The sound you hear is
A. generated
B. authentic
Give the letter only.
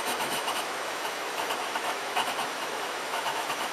A